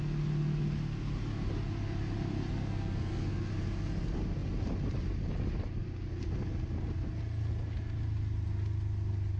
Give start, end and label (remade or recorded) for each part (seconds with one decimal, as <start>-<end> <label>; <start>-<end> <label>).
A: 0.0-2.5 recorded; 2.5-3.5 remade; 3.5-9.4 recorded